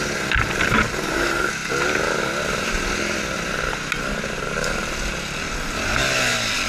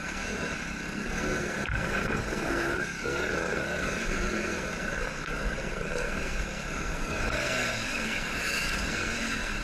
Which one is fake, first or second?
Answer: second